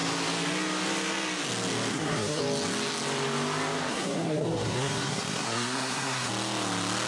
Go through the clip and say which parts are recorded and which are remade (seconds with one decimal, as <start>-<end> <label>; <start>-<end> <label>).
0.0-1.9 recorded; 1.9-2.4 remade; 2.4-3.9 recorded; 3.9-6.3 remade; 6.3-7.1 recorded